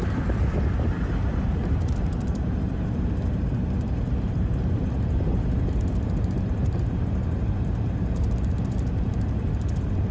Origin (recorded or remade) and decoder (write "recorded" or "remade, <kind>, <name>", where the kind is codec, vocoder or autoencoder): remade, vocoder, BigVGAN v2